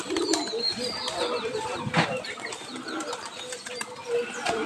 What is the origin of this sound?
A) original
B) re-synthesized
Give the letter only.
A